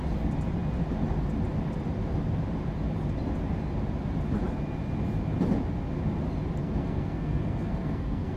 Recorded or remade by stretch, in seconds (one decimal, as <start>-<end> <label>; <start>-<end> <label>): 0.0-6.6 recorded; 6.6-8.4 remade